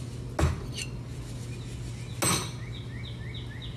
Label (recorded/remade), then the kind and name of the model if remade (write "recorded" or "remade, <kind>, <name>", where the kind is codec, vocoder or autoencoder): recorded